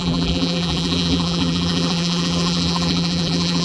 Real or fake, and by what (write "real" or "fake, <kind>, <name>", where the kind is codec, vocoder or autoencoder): fake, vocoder, BigVGAN v2